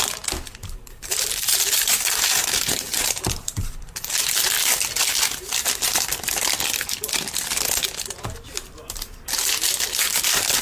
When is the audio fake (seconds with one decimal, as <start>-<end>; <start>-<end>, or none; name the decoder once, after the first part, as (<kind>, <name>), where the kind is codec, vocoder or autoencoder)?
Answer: 0.6-4.2 (vocoder, BigVGAN v2)